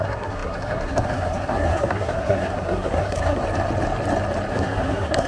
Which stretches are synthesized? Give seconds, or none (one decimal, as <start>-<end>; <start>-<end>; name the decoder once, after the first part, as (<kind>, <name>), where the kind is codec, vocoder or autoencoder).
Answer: 0.0-3.4 (codec, SNAC); 4.5-5.3

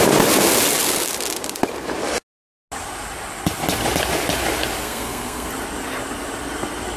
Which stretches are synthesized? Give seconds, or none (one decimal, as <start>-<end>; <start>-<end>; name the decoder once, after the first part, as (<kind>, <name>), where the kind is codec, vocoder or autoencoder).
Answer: 4.8-5.5 (codec, SNAC)